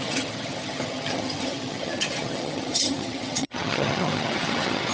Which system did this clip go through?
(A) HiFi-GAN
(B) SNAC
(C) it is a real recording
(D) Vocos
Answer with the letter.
A